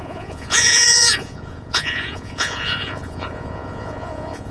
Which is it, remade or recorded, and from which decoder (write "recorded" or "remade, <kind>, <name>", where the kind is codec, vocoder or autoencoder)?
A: remade, vocoder, Vocos